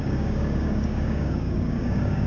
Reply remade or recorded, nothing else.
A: remade